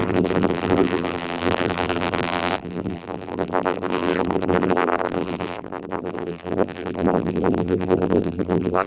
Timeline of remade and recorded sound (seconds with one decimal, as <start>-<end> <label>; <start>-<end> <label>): 0.0-8.9 remade